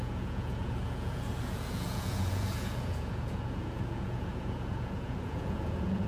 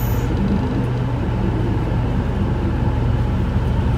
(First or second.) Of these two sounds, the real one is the second